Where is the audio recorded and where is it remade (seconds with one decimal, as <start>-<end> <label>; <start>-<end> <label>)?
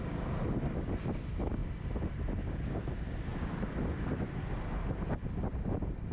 0.0-6.1 recorded